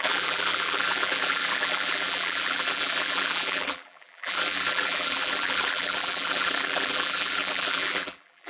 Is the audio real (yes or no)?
no